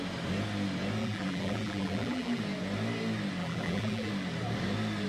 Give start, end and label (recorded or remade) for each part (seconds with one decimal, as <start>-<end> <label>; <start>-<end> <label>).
0.0-1.0 recorded; 1.0-2.4 remade; 2.4-3.4 recorded; 3.4-4.1 remade; 4.1-5.1 recorded